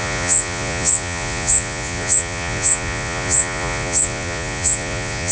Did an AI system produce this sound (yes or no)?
yes